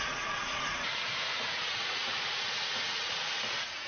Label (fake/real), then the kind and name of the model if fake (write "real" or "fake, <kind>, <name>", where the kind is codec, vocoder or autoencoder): fake, vocoder, Vocos